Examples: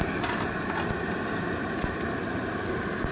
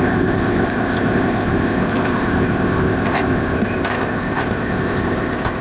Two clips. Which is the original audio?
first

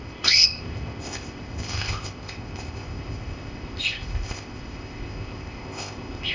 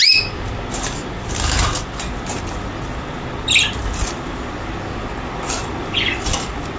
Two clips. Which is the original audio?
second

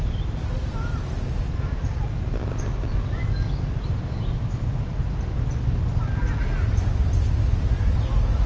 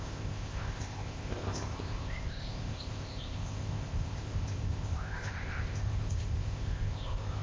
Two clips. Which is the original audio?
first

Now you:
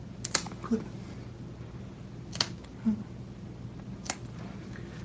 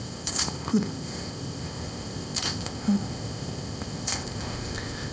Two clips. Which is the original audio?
first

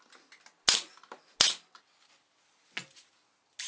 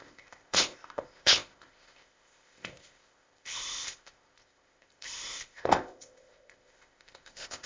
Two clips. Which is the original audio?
first